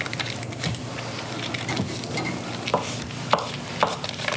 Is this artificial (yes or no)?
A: no